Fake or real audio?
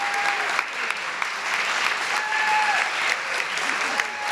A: real